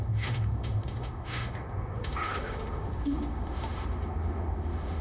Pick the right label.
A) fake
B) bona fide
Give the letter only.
A